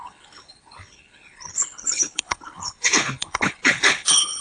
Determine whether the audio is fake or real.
fake